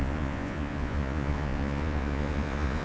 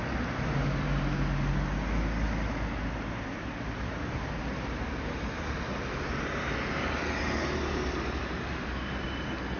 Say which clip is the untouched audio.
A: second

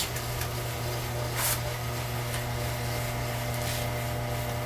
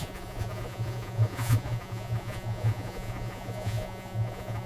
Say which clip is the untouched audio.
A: first